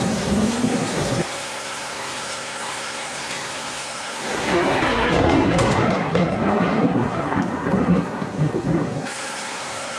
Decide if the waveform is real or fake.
fake